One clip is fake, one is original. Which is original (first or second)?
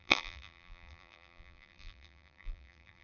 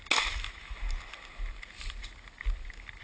second